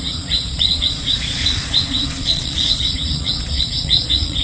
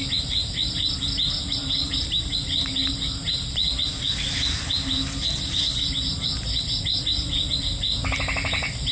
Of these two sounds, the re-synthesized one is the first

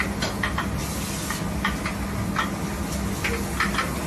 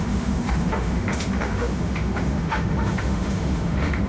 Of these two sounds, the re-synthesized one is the second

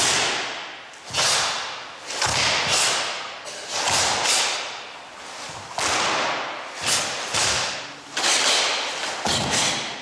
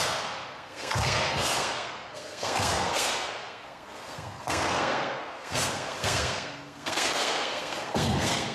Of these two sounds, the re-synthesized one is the second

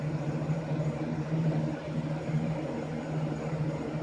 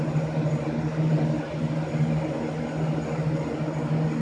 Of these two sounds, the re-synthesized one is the first